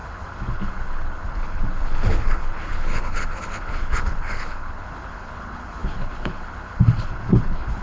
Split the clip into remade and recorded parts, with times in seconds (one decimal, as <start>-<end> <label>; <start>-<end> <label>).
0.0-7.8 remade